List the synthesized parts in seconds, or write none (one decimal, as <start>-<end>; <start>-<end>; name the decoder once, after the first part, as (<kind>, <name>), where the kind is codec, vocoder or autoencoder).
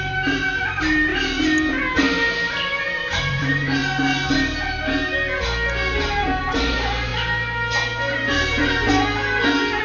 0.0-1.1 (vocoder, BigVGAN v2); 1.8-3.8; 6.4-7.1